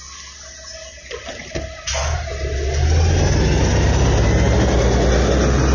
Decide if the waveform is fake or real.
real